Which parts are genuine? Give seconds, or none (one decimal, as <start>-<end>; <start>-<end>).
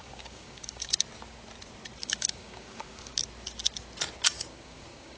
0.9-2.0; 3.2-4.5